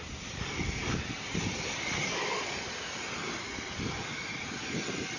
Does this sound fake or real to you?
real